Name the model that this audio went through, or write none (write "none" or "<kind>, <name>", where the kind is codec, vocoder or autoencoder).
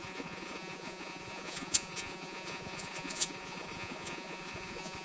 vocoder, Vocos